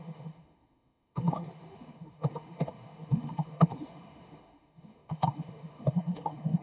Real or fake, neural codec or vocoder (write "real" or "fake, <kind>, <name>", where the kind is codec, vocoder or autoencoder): fake, autoencoder, DAC-VAE